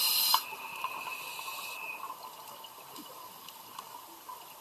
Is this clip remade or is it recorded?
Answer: recorded